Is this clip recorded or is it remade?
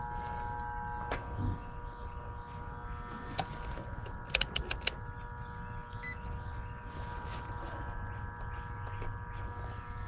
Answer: recorded